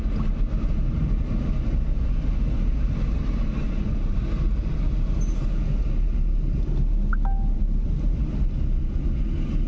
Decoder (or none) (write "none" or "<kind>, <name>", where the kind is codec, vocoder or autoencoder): none